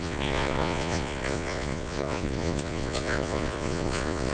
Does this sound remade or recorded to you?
remade